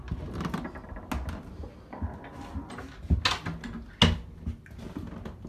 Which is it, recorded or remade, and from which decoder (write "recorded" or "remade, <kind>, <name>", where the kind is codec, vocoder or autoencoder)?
recorded